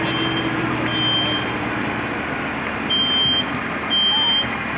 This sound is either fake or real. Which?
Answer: real